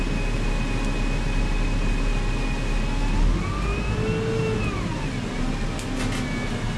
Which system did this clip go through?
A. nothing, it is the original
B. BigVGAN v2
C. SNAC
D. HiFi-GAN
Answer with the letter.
A